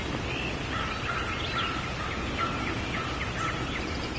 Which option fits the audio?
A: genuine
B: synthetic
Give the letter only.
A